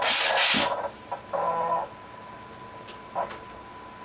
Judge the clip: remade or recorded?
recorded